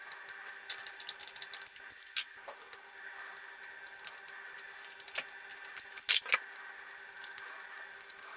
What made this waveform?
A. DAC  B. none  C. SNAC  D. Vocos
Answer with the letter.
B